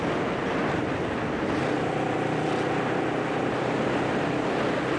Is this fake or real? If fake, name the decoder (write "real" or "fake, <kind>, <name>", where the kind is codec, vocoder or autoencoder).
real